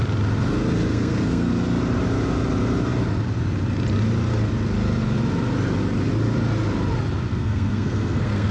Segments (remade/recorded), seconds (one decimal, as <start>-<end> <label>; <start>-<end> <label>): 0.0-0.9 recorded; 0.9-1.5 remade; 1.5-7.3 recorded; 7.3-8.5 remade